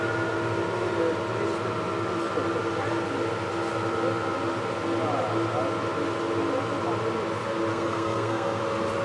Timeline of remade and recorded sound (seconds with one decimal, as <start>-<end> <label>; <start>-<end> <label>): 0.0-7.7 recorded; 7.7-8.6 remade; 8.6-9.0 recorded

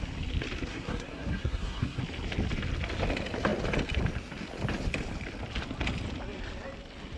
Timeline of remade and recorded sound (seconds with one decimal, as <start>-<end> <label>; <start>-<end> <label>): 0.0-0.7 recorded; 0.7-2.0 remade; 2.0-7.2 recorded

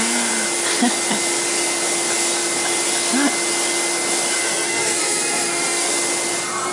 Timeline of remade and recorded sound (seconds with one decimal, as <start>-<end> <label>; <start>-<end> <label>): 0.0-4.4 recorded; 4.4-5.9 remade; 5.9-6.7 recorded

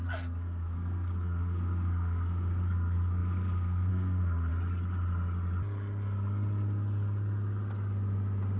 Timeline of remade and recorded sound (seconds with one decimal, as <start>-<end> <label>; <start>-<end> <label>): 0.0-4.5 remade; 4.5-8.6 recorded

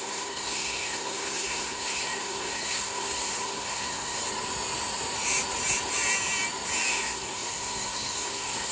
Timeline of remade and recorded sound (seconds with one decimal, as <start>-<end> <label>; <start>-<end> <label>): 0.0-4.2 remade; 4.2-6.9 recorded; 6.9-8.7 remade

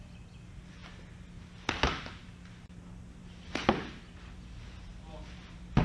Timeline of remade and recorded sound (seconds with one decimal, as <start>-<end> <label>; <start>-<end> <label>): 0.0-5.8 recorded